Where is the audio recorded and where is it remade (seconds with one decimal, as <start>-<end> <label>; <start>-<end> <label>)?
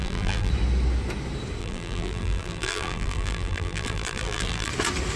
0.0-0.5 remade; 0.5-1.6 recorded; 1.6-4.7 remade; 4.7-5.2 recorded